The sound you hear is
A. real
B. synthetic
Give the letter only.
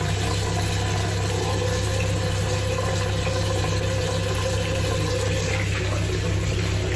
A